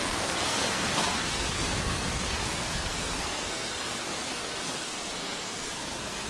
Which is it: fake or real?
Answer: fake